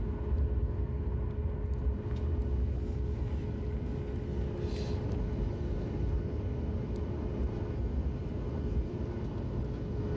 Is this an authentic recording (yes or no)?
yes